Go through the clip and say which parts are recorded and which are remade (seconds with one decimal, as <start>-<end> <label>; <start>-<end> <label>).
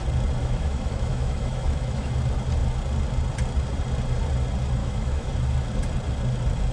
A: 0.0-0.4 recorded; 0.4-2.1 remade; 2.1-4.8 recorded; 4.8-5.3 remade; 5.3-6.7 recorded